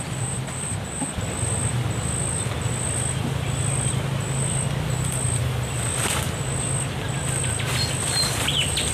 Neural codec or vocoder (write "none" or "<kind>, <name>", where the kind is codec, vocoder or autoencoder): none